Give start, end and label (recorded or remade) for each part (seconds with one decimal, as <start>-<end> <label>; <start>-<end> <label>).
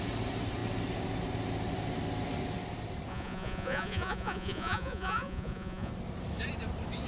0.0-3.1 recorded; 3.1-5.9 remade; 5.9-7.1 recorded